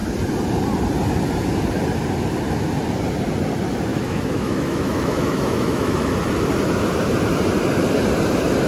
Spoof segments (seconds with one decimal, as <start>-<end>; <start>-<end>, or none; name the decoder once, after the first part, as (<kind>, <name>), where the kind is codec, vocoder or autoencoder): 3.9-6.1 (autoencoder, DAC-VAE)